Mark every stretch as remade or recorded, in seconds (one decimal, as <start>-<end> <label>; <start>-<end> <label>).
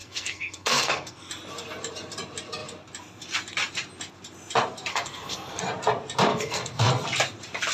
0.0-1.3 remade; 1.3-4.9 recorded; 4.9-5.6 remade; 5.6-6.3 recorded; 6.3-6.9 remade; 6.9-7.7 recorded